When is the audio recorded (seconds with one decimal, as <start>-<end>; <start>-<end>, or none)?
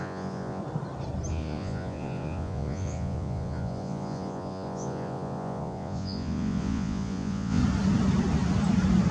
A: 0.6-1.3; 7.6-9.1